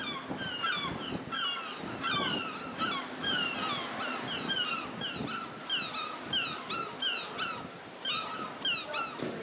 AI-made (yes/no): no